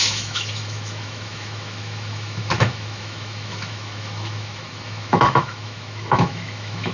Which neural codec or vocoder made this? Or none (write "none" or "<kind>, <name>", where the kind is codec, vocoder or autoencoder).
autoencoder, DAC-VAE